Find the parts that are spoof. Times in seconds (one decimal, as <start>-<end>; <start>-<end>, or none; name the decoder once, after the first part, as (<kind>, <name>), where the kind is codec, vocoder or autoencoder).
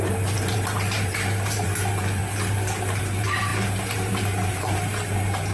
0.0-2.2 (vocoder, BigVGAN v2); 3.0-5.5